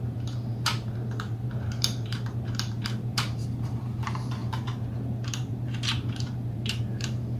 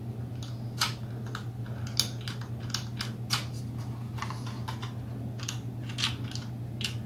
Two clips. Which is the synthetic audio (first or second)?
first